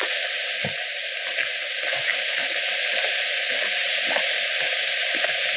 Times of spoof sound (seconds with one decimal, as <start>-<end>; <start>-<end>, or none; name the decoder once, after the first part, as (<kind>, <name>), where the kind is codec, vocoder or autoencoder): none